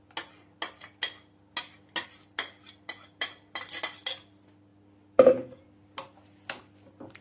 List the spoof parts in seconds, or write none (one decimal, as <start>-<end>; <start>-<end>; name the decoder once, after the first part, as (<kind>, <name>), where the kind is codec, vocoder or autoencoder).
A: none